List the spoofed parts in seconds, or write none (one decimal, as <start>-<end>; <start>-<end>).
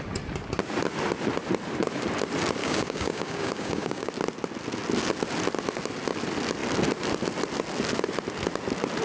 2.6-4.1